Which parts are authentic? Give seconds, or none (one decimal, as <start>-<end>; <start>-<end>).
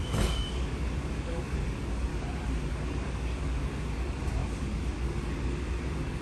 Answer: 2.1-2.7